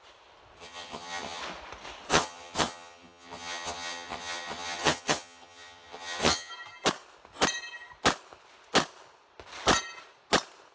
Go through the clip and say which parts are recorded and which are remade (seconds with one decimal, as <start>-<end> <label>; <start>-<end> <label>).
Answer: 0.0-0.6 recorded; 0.6-1.4 remade; 1.4-2.1 recorded; 2.1-6.5 remade; 6.5-10.7 recorded